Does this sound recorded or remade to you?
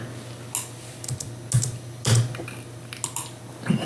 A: recorded